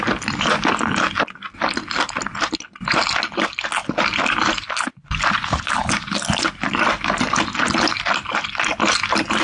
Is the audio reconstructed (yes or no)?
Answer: no